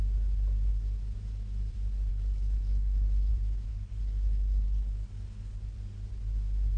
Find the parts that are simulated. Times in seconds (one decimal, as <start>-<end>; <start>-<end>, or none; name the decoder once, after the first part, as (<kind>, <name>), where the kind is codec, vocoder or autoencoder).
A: 2.1-3.3 (codec, HILCodec); 3.7-5.6